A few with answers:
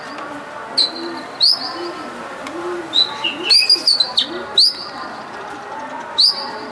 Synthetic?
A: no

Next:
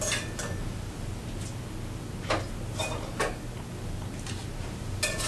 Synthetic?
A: no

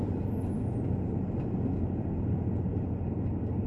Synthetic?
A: no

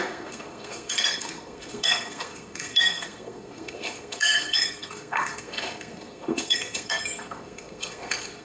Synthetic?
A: yes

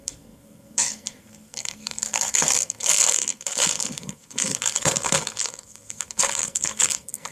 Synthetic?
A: yes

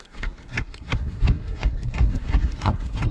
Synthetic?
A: yes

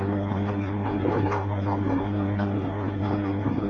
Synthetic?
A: yes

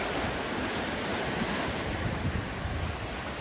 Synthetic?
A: no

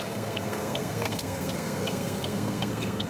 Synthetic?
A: yes